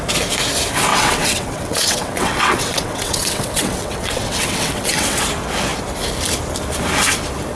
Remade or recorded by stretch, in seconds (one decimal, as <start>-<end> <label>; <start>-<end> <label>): 0.0-0.9 recorded; 0.9-5.2 remade; 5.2-7.6 recorded